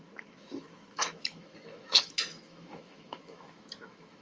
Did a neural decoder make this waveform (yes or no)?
yes